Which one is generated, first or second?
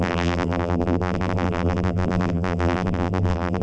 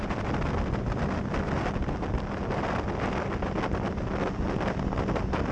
first